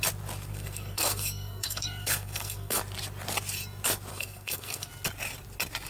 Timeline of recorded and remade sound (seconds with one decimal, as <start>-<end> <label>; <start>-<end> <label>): 0.0-0.5 recorded; 0.5-2.8 remade; 2.8-4.1 recorded; 4.1-4.9 remade; 4.9-5.9 recorded